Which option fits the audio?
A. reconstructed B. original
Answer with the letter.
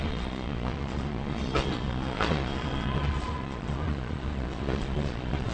A